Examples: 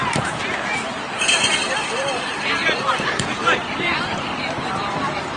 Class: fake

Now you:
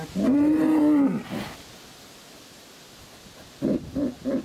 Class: real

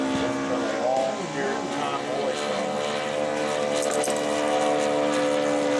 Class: real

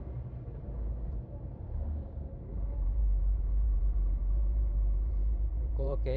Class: fake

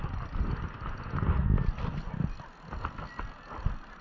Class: real